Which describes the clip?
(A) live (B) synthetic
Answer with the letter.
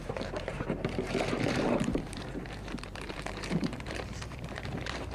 B